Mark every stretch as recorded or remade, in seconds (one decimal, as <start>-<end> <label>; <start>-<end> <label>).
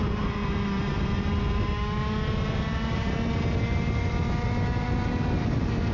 0.0-5.9 recorded